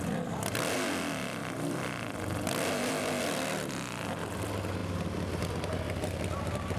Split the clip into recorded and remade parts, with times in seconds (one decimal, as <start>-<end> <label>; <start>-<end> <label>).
0.0-1.4 recorded; 1.4-2.9 remade; 2.9-6.8 recorded